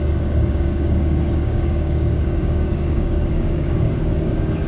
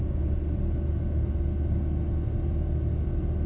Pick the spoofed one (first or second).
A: first